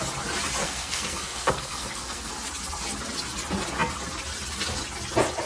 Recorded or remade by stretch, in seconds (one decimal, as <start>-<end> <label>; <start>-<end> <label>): 0.0-0.6 recorded; 0.6-2.3 remade; 2.3-5.5 recorded